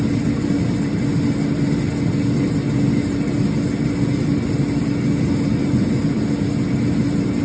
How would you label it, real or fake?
real